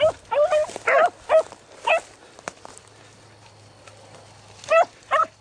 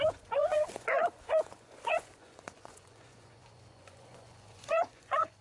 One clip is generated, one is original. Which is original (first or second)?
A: first